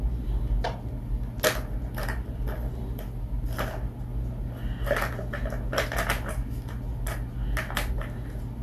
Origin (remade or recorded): recorded